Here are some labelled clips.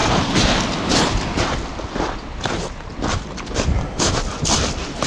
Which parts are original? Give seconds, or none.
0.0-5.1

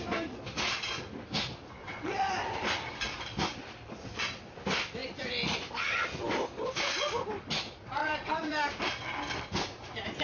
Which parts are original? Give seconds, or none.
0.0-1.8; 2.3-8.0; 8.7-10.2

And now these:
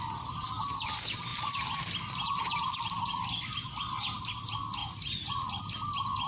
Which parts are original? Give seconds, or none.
0.0-4.8; 5.6-6.3

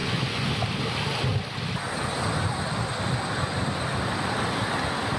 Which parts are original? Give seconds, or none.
0.5-5.2